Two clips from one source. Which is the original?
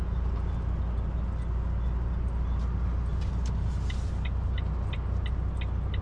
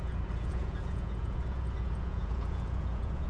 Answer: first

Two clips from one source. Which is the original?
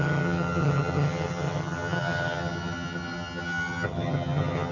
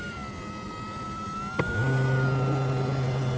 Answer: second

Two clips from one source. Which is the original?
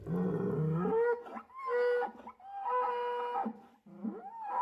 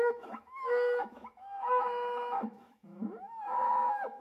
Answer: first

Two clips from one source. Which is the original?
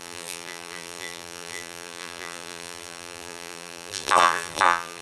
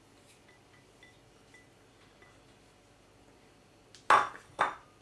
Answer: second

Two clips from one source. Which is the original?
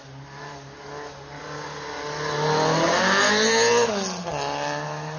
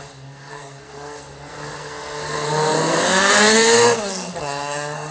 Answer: first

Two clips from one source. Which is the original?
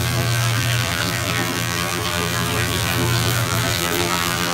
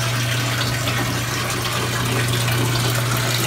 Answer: second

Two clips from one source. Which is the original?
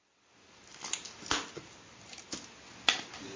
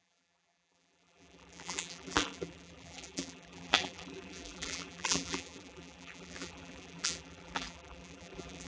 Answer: first